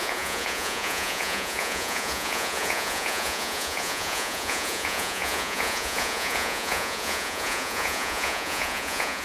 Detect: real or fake fake